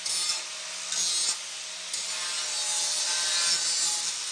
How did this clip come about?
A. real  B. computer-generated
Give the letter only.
A